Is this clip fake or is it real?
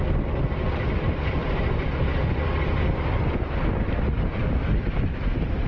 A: real